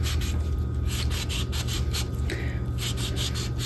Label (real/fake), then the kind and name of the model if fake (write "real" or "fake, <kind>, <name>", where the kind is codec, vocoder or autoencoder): real